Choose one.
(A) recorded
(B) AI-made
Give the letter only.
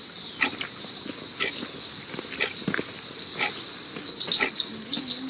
A